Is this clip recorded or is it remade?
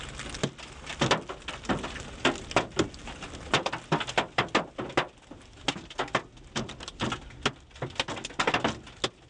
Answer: recorded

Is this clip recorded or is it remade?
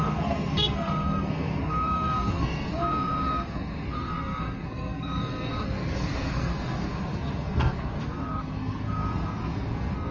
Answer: remade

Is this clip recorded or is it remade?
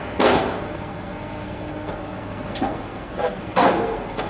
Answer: remade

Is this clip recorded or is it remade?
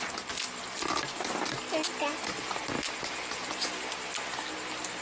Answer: recorded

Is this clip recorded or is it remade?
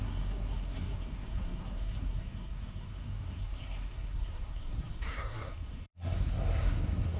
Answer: remade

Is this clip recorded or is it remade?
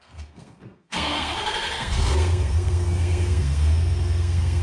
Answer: remade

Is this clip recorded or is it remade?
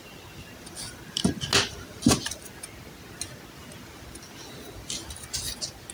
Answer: recorded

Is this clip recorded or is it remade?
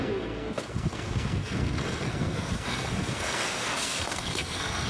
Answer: remade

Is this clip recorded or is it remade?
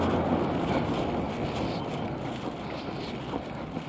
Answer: recorded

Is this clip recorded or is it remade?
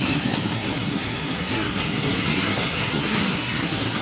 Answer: remade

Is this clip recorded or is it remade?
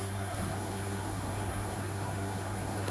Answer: remade